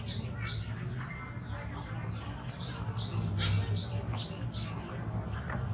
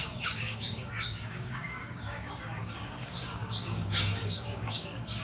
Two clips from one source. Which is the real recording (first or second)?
first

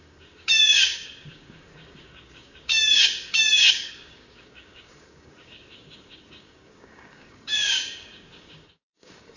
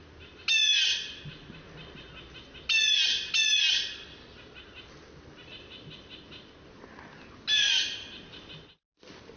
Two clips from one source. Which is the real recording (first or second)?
second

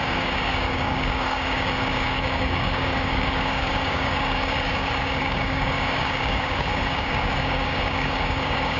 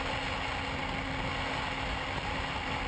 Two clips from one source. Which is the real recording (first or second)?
second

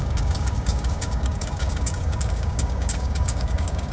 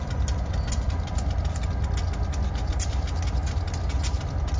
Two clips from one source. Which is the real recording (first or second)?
second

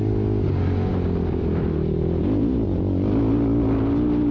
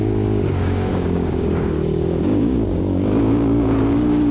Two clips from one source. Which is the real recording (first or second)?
first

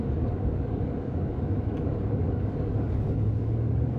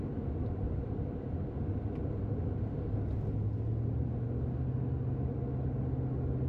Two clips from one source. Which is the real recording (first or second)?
second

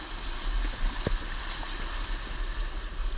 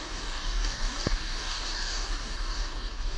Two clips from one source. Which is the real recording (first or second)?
first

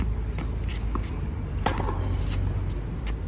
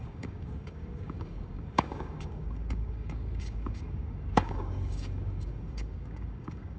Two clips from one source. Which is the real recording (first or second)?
first